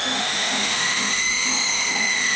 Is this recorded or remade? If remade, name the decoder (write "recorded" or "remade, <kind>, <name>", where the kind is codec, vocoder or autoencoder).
remade, autoencoder, DAC-VAE